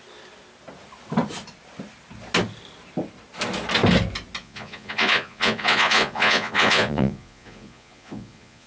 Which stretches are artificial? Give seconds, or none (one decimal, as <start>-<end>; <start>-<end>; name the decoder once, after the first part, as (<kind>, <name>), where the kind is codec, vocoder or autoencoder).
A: 4.4-8.7 (vocoder, Vocos)